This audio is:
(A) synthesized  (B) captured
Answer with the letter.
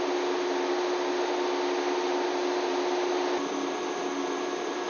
B